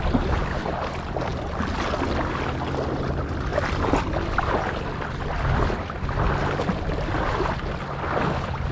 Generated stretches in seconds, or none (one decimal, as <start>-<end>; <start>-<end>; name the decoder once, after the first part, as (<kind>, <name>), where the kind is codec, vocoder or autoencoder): none